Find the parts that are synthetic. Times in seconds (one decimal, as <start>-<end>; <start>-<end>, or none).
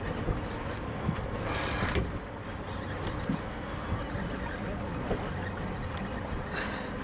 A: 0.9-1.4; 3.4-4.0